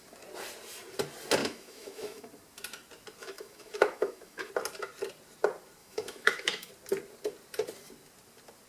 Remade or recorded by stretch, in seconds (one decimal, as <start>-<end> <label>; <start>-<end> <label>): 0.0-1.4 recorded; 1.4-2.3 remade; 2.3-3.2 recorded; 3.2-4.5 remade; 4.5-5.8 recorded; 5.8-6.7 remade; 6.7-8.7 recorded